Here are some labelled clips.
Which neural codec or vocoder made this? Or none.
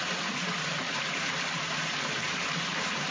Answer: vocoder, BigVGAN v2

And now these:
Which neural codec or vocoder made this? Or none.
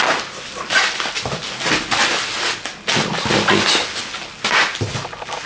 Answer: none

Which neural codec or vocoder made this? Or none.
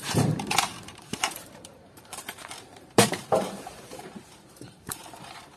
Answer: vocoder, BigVGAN v2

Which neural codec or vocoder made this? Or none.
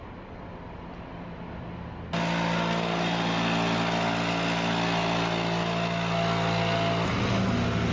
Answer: none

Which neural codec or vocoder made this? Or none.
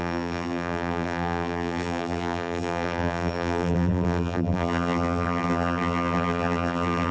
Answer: vocoder, BigVGAN v2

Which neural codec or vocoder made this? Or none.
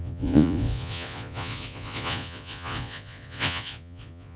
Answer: vocoder, Vocos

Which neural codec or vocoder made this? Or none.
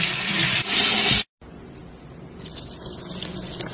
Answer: none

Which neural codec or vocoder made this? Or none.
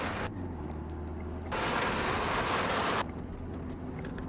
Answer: none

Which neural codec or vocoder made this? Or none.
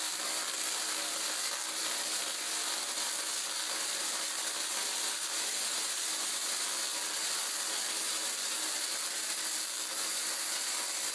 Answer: none